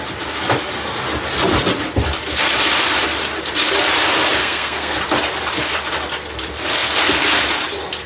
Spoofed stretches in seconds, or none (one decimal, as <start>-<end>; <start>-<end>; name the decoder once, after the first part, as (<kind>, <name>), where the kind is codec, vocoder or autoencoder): 4.4-5.0 (codec, SNAC)